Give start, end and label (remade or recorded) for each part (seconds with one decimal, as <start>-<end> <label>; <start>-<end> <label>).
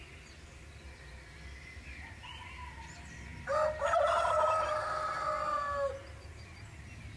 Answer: 0.0-7.2 recorded